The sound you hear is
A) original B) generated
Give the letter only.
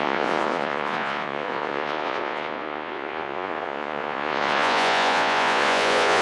B